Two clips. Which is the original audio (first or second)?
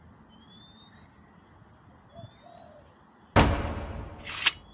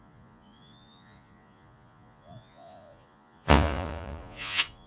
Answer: first